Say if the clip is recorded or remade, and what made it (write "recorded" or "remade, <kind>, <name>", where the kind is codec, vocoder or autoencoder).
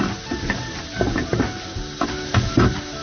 recorded